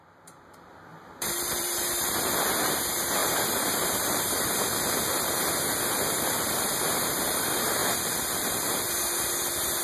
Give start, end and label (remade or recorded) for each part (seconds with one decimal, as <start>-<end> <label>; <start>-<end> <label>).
0.0-0.9 recorded; 0.9-2.3 remade; 2.3-7.8 recorded; 7.8-8.9 remade; 8.9-9.8 recorded